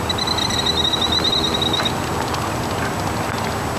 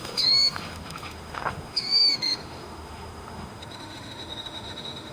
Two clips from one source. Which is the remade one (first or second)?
second